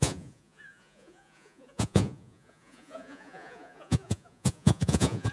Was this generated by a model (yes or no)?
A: yes